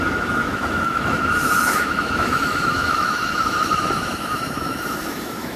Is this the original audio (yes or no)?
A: no